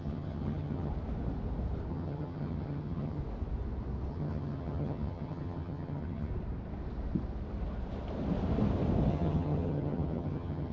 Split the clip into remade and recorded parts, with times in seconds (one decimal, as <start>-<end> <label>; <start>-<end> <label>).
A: 0.0-0.9 remade; 0.9-1.9 recorded; 1.9-3.2 remade; 3.2-4.1 recorded; 4.1-6.3 remade; 6.3-9.1 recorded; 9.1-10.7 remade